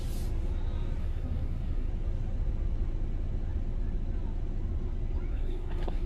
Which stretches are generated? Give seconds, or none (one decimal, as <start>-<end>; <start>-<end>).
1.0-1.9; 5.3-6.1